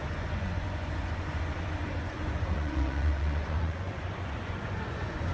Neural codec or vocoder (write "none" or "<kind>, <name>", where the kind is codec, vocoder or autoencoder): vocoder, Vocos